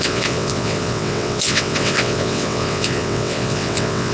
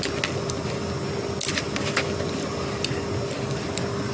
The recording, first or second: second